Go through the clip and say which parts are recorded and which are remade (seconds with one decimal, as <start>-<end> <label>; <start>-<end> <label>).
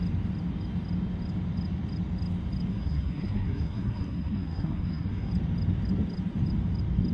0.0-2.7 recorded; 2.7-5.3 remade; 5.3-7.1 recorded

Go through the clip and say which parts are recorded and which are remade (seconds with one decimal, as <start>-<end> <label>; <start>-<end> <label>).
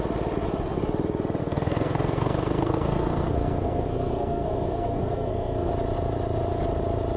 0.0-1.4 recorded; 1.4-5.7 remade; 5.7-7.2 recorded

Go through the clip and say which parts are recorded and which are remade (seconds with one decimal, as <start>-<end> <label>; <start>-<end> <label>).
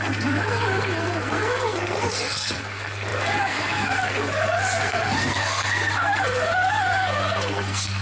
0.0-8.0 remade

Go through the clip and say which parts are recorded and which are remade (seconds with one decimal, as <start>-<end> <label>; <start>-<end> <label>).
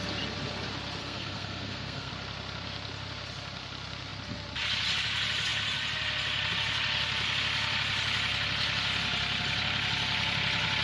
0.0-1.0 recorded; 1.0-2.1 remade; 2.1-10.8 recorded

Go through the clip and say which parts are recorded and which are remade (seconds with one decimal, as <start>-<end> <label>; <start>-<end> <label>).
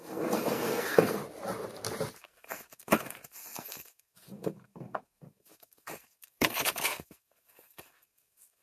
0.0-1.2 remade; 1.2-2.2 recorded; 2.2-8.6 remade